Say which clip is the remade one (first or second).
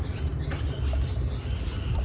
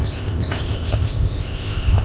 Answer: second